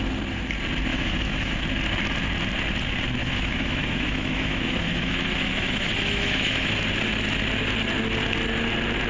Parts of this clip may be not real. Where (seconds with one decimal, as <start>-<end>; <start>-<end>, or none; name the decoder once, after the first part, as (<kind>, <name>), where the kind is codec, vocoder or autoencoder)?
0.9-1.6 (autoencoder, DAC-VAE); 3.2-6.7